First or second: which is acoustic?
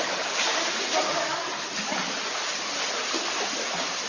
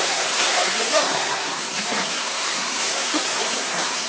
first